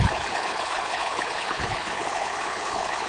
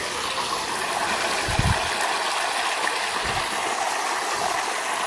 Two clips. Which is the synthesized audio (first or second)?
first